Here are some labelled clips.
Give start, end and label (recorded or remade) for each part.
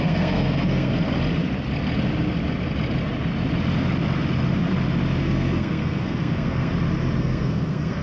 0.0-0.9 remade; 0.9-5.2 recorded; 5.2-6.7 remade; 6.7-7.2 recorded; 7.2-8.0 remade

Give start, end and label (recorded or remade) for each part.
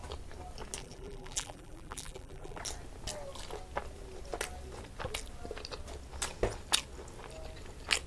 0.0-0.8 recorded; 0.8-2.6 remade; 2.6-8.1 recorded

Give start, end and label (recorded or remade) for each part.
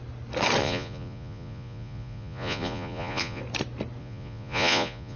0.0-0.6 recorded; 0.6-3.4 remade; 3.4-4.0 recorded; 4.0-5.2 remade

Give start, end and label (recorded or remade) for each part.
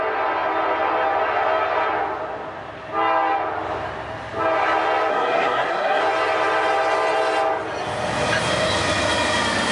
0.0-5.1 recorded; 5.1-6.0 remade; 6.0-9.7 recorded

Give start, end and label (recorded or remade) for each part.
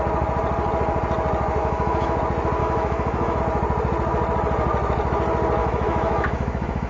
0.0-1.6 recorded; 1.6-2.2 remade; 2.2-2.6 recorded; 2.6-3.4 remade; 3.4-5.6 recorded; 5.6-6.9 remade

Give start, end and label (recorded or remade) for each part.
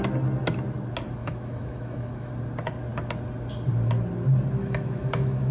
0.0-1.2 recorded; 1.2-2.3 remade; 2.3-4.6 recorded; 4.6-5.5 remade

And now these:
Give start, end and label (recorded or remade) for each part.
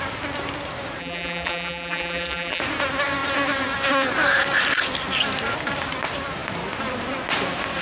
0.0-1.0 recorded; 1.0-2.6 remade; 2.6-7.8 recorded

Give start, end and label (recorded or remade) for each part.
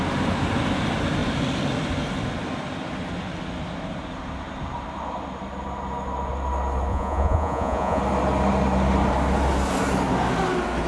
0.0-6.9 recorded; 6.9-8.0 remade; 8.0-10.9 recorded